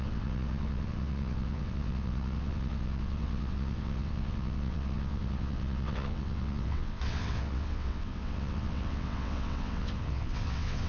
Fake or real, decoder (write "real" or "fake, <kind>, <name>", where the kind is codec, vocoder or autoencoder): fake, vocoder, WaveNeXt